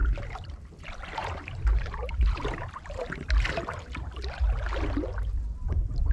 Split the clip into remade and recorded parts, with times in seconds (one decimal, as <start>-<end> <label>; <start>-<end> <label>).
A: 0.0-0.6 remade; 0.6-1.2 recorded; 1.2-3.2 remade; 3.2-6.1 recorded